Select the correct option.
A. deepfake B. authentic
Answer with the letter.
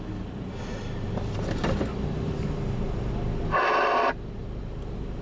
B